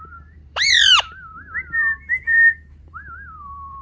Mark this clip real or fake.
fake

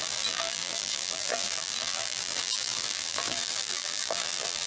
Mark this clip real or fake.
fake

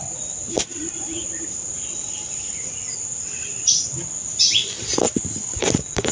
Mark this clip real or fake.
fake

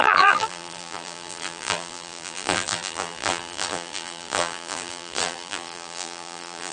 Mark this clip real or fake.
fake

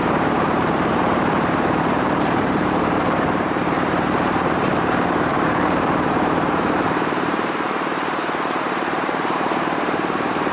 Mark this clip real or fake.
fake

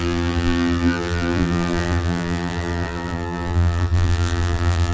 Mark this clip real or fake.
fake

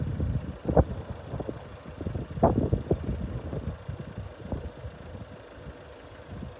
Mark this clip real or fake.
real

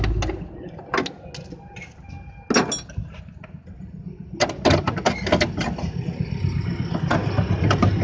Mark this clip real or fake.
real